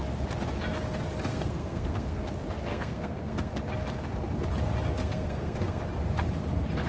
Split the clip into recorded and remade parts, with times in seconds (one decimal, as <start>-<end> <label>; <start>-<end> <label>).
0.0-1.3 recorded; 1.3-2.2 remade; 2.2-2.7 recorded; 2.7-3.5 remade; 3.5-5.0 recorded; 5.0-5.8 remade; 5.8-6.9 recorded